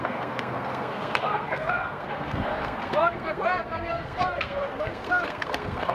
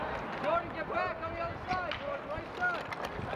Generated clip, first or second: first